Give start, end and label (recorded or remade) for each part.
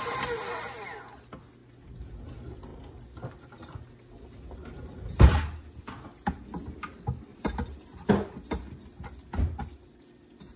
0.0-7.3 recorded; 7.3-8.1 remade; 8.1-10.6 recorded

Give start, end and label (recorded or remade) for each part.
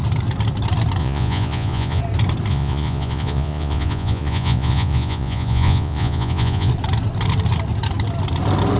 0.0-1.0 recorded; 1.0-2.0 remade; 2.0-2.5 recorded; 2.5-6.7 remade; 6.7-8.8 recorded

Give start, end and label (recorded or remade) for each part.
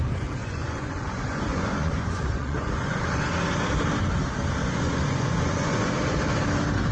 0.0-0.4 recorded; 0.4-3.2 remade; 3.2-4.6 recorded; 4.6-5.9 remade; 5.9-6.9 recorded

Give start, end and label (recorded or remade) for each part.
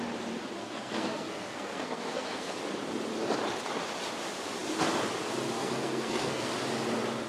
0.0-0.6 recorded; 0.6-2.6 remade; 2.6-5.6 recorded; 5.6-6.5 remade; 6.5-7.3 recorded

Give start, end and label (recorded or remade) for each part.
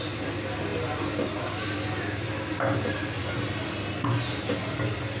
0.0-5.2 recorded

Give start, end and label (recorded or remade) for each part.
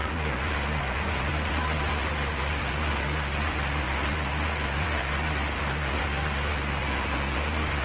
0.0-7.8 remade